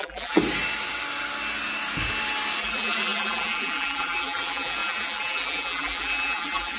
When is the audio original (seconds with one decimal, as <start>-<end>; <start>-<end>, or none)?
0.4-2.6